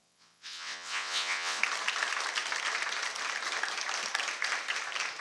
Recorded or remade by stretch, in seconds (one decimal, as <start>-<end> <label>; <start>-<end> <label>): 0.0-1.6 remade; 1.6-5.2 recorded